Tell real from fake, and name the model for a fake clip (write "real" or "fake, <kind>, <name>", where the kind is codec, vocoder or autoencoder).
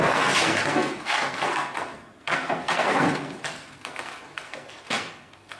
fake, codec, SNAC